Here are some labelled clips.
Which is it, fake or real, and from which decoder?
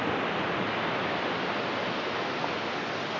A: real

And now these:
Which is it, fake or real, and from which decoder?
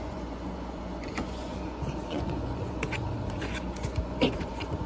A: fake, vocoder, Vocos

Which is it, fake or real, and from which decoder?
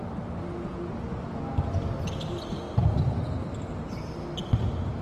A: real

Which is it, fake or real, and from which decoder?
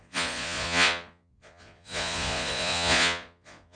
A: fake, vocoder, Vocos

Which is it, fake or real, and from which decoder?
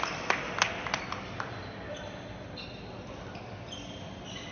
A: real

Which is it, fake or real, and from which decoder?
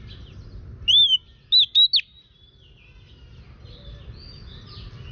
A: real